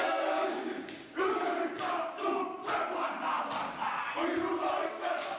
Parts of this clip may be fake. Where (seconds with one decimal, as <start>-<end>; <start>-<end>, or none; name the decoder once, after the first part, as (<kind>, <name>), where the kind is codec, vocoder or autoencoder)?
0.0-2.6 (codec, DAC); 4.8-5.4